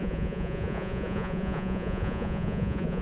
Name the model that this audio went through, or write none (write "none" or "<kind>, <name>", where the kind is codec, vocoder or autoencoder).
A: vocoder, Vocos